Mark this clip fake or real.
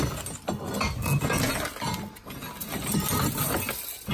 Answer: real